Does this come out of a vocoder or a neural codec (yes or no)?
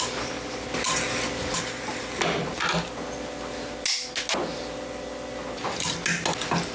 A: no